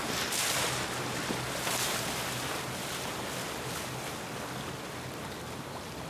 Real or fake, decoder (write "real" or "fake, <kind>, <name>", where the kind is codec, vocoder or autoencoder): real